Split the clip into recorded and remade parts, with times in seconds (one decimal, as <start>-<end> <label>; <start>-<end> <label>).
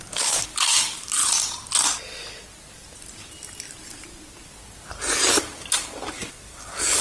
0.0-1.2 remade; 1.2-5.4 recorded; 5.4-7.0 remade